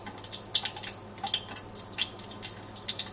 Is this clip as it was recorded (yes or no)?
yes